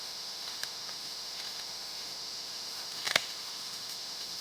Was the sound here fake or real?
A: fake